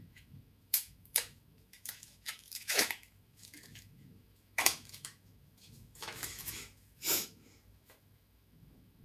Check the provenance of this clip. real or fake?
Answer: fake